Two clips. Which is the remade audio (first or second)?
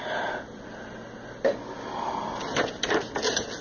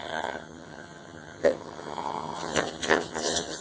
second